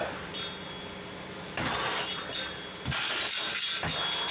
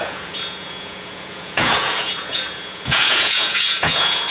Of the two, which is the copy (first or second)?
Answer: second